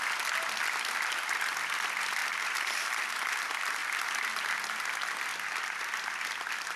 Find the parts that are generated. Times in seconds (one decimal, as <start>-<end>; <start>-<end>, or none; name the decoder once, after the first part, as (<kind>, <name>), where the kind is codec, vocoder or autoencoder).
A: none